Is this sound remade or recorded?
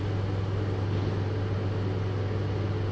recorded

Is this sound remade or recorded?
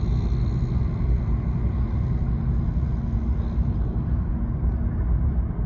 recorded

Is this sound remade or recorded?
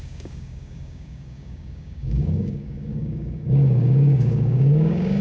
remade